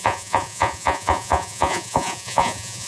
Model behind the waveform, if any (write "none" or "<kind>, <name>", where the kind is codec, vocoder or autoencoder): vocoder, Vocos